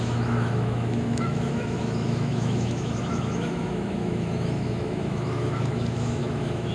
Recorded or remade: remade